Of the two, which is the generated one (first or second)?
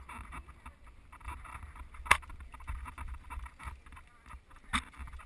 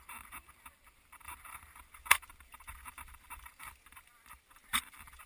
second